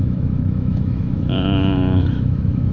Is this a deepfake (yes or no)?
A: yes